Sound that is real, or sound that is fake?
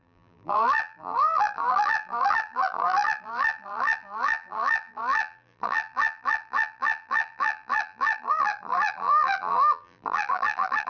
fake